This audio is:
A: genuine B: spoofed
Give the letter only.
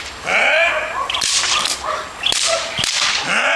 A